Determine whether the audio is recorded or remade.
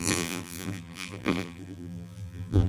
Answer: remade